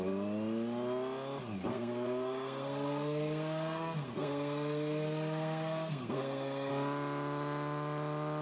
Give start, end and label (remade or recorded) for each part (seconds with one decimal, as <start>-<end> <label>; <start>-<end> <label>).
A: 0.0-1.7 recorded; 1.7-6.7 remade; 6.7-8.4 recorded